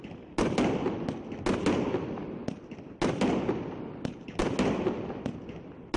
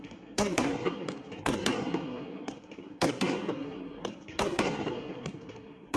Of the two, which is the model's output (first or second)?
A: second